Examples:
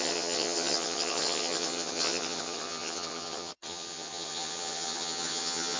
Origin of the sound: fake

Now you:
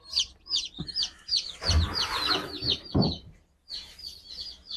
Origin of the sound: real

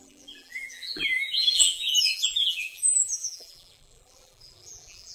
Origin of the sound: fake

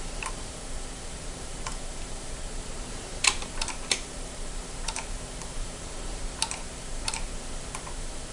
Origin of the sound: fake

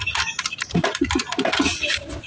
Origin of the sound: real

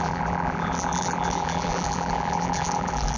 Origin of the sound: fake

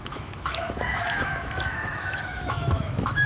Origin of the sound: fake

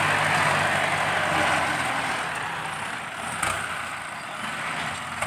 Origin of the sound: real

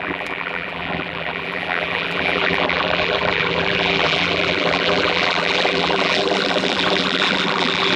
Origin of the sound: fake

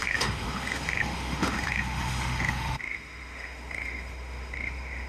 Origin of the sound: fake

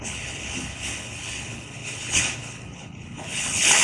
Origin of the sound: fake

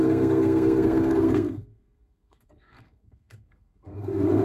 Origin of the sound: fake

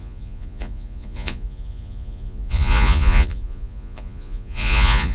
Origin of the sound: fake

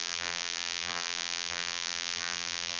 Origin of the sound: fake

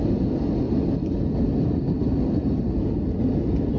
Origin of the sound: real